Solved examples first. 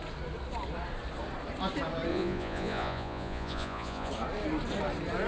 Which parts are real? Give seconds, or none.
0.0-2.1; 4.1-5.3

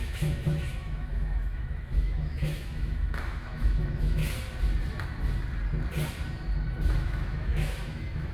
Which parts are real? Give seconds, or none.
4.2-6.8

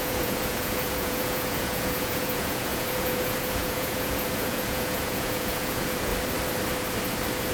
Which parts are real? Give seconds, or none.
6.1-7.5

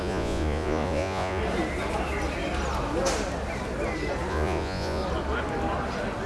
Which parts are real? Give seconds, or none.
1.4-4.3; 5.0-6.3

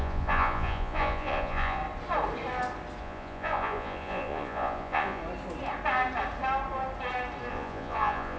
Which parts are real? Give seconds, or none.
1.8-3.0; 5.2-7.5

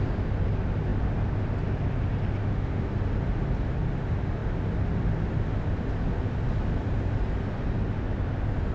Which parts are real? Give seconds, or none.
0.0-2.4; 2.9-8.7

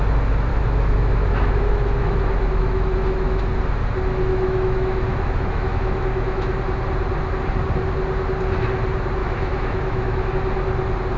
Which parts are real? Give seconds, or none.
0.0-0.5; 3.4-4.3; 6.6-9.2; 10.3-11.2

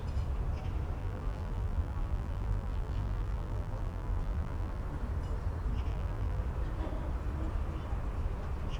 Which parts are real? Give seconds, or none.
0.0-1.0; 4.8-5.9; 6.4-8.8